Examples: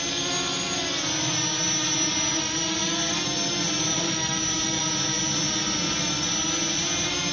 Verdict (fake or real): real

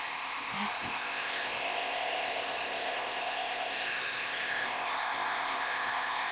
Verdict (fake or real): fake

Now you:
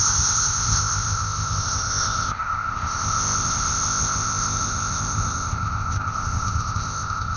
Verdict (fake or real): fake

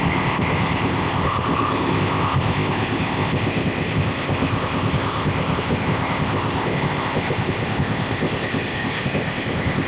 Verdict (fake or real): fake